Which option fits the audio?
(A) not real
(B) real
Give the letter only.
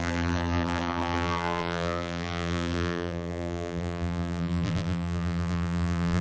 A